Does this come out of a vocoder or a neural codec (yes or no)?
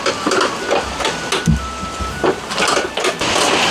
no